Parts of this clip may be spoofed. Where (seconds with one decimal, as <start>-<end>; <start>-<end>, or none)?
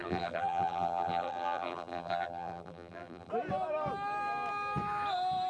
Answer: 0.0-3.3